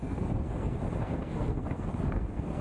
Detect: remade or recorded remade